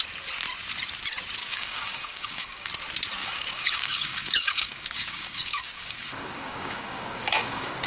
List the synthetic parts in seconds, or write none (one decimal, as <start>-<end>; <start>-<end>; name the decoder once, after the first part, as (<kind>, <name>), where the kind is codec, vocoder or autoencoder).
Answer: 1.4-2.7 (codec, DAC); 3.2-7.9